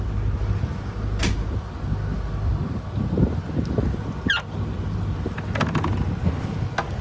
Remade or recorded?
recorded